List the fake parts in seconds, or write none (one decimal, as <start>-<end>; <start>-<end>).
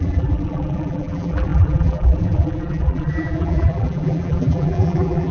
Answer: 0.0-5.3